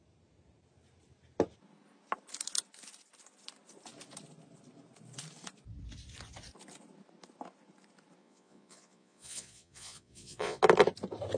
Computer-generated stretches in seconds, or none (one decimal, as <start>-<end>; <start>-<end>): 8.2-10.6